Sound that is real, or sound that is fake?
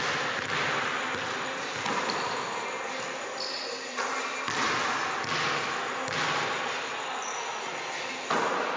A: real